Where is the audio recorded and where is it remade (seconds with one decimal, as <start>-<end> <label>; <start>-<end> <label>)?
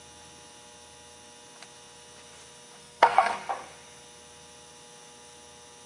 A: 0.0-2.8 recorded; 2.8-3.3 remade; 3.3-5.9 recorded